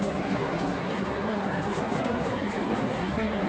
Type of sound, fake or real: fake